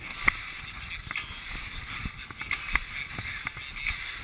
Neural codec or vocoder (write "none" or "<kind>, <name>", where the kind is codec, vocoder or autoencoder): none